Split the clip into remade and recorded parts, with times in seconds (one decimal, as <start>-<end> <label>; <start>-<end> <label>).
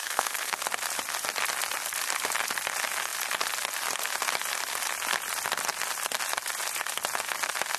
0.0-0.6 remade; 0.6-7.8 recorded